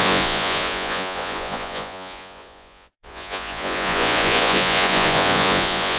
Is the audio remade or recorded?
remade